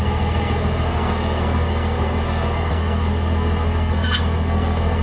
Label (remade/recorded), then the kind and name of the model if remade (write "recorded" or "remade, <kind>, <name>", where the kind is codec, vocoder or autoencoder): remade, codec, SNAC